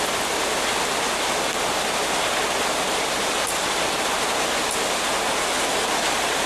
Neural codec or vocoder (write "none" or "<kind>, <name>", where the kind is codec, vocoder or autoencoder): none